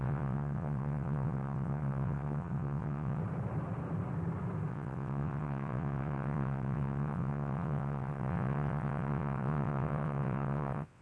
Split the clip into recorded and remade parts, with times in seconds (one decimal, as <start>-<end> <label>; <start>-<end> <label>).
0.0-3.2 remade; 3.2-4.7 recorded; 4.7-11.0 remade